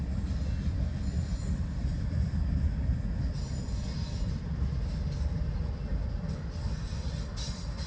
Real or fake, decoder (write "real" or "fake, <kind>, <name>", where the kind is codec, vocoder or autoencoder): real